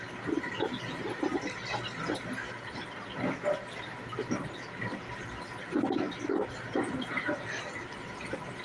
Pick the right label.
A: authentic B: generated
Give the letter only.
A